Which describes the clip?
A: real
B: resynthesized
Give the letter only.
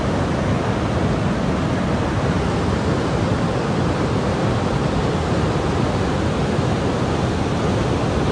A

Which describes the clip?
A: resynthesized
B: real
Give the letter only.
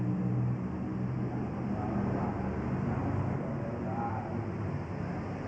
B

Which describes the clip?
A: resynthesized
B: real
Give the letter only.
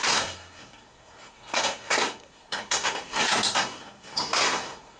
A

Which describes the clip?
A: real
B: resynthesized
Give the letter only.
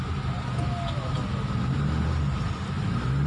A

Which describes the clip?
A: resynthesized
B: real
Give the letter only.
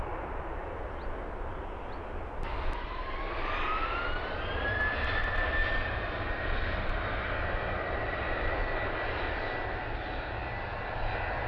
B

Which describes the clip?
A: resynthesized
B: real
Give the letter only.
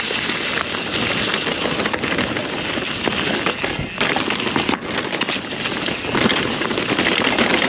B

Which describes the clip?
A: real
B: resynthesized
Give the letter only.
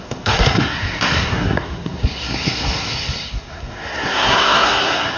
B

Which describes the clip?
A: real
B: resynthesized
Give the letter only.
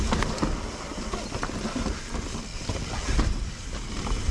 A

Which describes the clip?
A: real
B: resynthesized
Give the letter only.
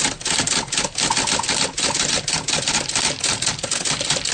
A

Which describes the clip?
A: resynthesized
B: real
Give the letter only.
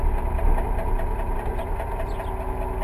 B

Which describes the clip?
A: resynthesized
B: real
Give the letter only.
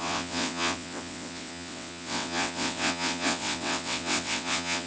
A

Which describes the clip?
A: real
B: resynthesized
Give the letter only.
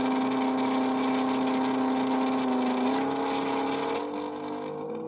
A